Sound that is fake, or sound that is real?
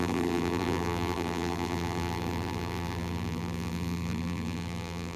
fake